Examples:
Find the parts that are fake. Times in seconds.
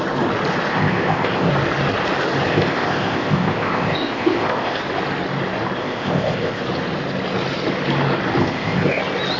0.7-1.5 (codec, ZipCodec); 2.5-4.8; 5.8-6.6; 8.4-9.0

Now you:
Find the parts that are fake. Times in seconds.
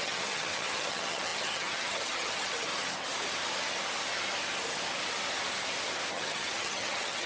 0.0-2.7 (vocoder, HiFi-GAN); 6.1-7.3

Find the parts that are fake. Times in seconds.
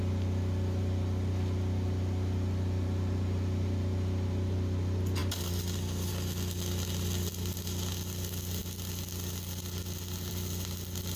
none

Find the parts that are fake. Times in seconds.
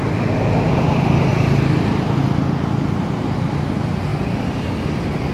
1.3-2.2 (vocoder, BigVGAN v2)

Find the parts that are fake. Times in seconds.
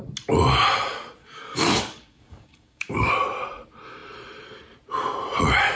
1.2-3.1 (codec, DAC)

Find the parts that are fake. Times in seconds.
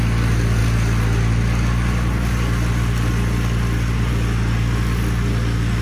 none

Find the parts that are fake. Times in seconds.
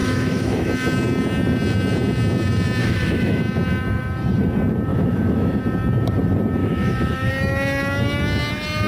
0.0-0.7 (autoencoder, DAC-VAE); 2.8-3.4; 4.9-5.6; 6.6-7.3